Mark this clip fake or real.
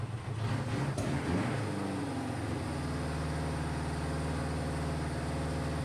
real